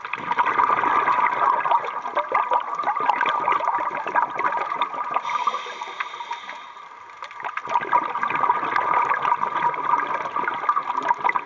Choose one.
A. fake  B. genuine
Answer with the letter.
B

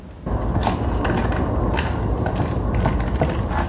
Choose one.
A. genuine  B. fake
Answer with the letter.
A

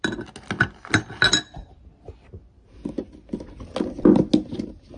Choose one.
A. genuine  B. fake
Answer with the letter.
A